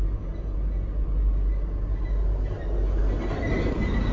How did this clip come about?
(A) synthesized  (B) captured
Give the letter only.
B